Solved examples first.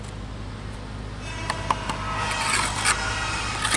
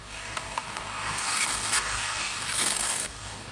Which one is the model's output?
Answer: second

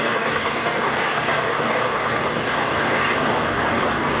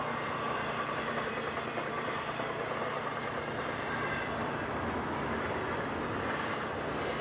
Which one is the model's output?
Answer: first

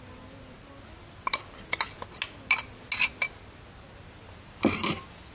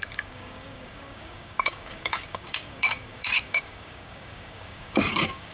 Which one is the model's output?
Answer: second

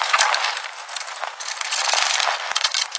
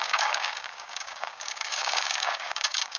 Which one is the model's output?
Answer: second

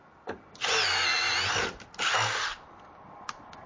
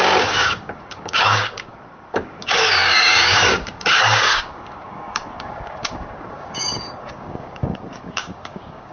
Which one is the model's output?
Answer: second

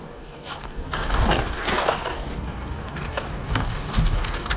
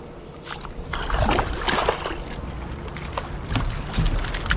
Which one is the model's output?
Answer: first